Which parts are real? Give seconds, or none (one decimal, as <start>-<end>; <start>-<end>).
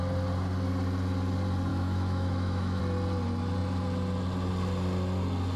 0.0-1.7; 2.8-5.6